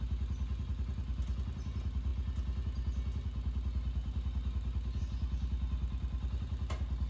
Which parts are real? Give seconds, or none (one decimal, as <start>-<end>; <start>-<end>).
0.0-7.1